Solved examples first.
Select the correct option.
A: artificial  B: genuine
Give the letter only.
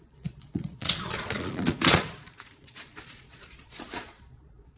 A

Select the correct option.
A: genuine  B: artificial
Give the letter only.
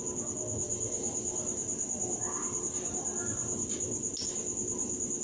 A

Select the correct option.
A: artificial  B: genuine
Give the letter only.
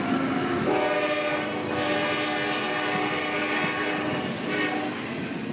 B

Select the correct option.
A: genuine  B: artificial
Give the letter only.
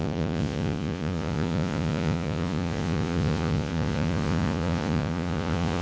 B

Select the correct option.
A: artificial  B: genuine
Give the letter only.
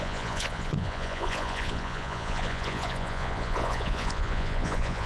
A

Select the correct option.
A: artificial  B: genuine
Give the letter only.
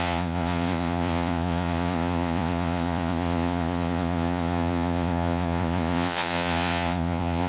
A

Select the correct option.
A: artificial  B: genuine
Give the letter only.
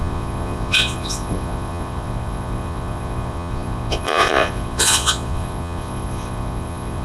A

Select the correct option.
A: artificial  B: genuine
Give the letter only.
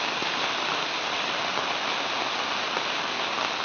B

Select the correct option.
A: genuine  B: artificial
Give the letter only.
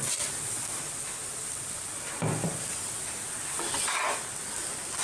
A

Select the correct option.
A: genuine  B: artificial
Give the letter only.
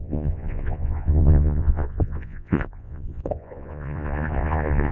B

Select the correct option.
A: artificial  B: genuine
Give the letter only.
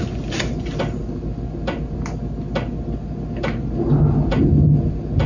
B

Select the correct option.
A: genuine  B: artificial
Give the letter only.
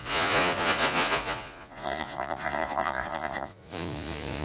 B